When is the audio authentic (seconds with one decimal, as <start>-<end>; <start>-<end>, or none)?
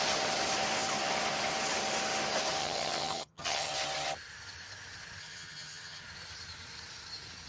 0.0-2.6; 3.7-5.2; 6.0-7.5